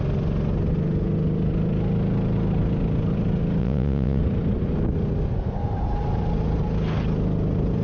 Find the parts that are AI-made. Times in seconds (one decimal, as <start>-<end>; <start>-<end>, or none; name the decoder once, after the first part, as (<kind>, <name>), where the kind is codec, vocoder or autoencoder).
3.6-4.2 (vocoder, Vocos)